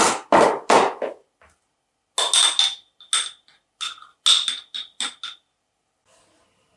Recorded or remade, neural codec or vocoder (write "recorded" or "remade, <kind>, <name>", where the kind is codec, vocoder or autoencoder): recorded